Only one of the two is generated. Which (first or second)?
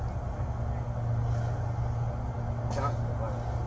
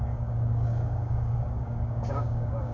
second